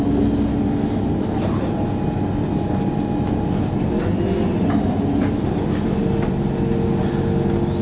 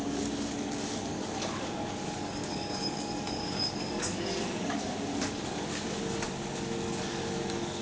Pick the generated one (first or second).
second